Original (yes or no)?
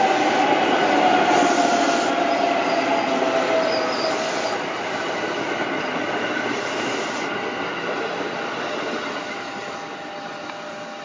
yes